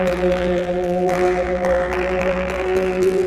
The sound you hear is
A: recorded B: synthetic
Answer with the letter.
B